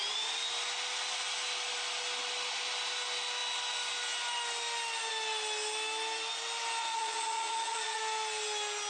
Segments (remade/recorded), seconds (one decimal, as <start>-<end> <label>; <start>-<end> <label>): 0.0-6.8 recorded; 6.8-8.0 remade; 8.0-8.9 recorded